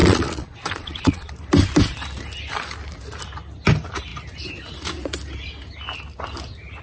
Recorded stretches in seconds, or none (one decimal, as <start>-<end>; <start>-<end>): 1.3-6.8